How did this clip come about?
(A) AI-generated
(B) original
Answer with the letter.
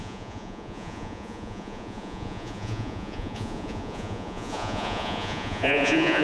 A